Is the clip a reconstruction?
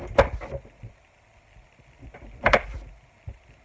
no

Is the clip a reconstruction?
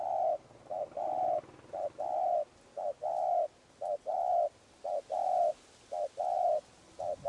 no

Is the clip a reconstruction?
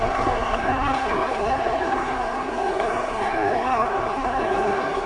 yes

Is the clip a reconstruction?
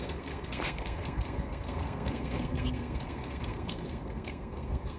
yes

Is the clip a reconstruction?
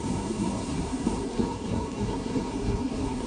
yes